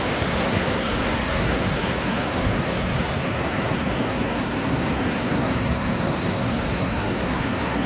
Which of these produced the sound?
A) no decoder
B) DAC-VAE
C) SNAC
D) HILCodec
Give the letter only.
C